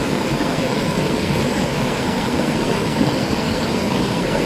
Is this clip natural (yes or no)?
no